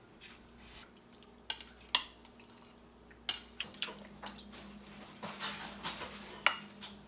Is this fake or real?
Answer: real